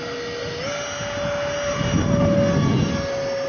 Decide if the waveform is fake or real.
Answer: real